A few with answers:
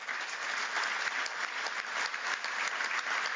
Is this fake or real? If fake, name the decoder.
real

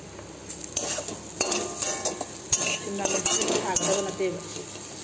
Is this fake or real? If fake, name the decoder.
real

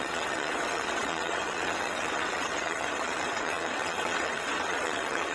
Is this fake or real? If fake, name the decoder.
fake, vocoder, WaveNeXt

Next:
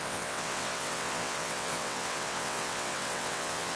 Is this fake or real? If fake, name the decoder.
fake, vocoder, WaveNeXt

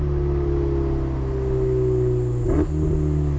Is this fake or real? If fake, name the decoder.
real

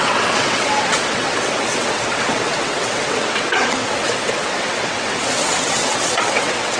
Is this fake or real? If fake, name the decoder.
fake, vocoder, WaveNeXt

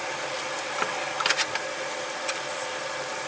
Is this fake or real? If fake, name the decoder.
real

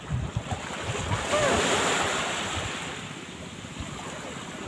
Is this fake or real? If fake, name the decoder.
real